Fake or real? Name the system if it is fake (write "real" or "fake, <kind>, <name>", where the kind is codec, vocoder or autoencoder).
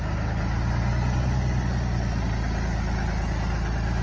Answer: real